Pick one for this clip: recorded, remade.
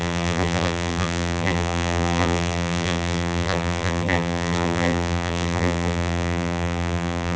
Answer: remade